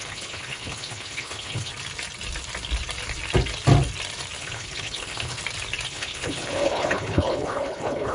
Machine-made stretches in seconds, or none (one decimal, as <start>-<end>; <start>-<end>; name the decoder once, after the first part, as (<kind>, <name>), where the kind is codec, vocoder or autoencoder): 0.0-1.7 (codec, HILCodec); 4.4-5.4; 5.9-8.1